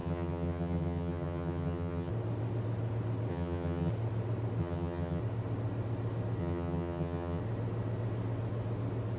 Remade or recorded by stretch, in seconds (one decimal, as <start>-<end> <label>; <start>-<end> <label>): 0.0-2.1 remade; 2.1-3.3 recorded; 3.3-3.9 remade; 3.9-4.6 recorded; 4.6-5.2 remade; 5.2-6.4 recorded; 6.4-7.4 remade; 7.4-9.2 recorded